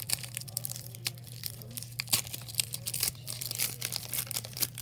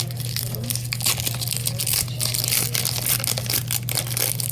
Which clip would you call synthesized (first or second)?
first